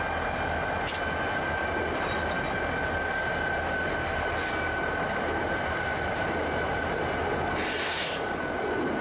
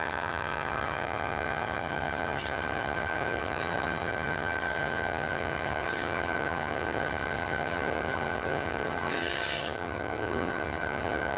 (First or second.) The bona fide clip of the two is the first